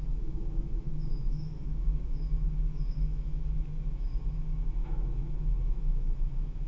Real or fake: fake